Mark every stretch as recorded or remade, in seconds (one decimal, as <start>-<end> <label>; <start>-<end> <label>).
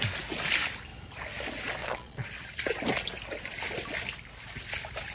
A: 0.0-1.8 recorded; 1.8-2.3 remade; 2.3-5.1 recorded